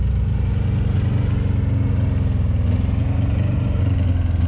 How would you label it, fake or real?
real